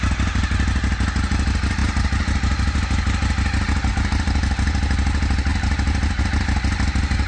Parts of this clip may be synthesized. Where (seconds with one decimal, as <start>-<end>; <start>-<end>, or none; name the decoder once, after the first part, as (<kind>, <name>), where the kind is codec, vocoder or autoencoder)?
none